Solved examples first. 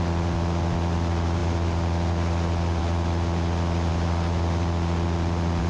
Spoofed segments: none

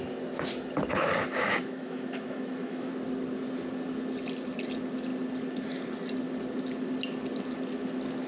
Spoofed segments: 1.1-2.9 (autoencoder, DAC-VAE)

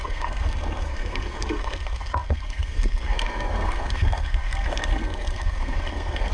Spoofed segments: 0.0-6.3 (codec, SNAC)